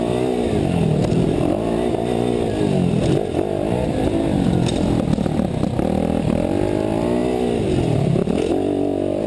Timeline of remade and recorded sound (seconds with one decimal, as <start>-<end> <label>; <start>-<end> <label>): 0.0-9.3 recorded